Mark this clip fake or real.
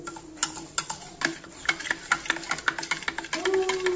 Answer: real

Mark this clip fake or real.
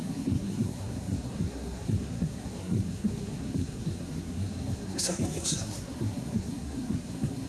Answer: fake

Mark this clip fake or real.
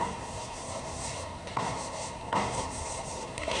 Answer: fake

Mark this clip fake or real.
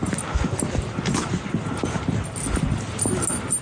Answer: real